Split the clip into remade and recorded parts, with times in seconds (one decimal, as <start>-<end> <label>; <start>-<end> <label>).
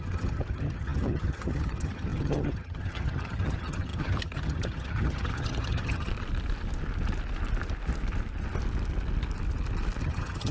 0.0-6.1 remade; 6.1-10.0 recorded; 10.0-10.5 remade